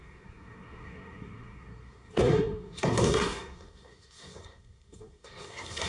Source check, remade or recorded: remade